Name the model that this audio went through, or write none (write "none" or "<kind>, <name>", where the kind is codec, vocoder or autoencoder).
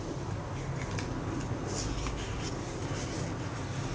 none